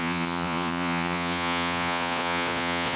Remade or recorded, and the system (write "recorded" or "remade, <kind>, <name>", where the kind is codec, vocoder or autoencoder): remade, vocoder, Vocos